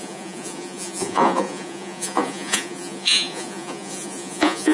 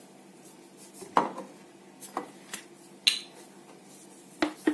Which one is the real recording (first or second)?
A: second